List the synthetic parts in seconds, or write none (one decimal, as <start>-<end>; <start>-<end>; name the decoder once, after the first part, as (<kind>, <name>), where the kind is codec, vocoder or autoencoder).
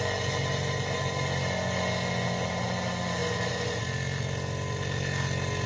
none